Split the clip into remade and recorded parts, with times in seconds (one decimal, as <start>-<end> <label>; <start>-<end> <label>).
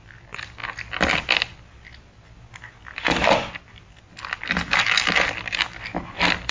0.0-6.5 recorded